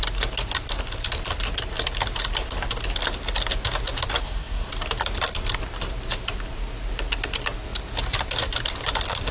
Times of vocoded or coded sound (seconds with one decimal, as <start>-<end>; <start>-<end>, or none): 4.2-4.7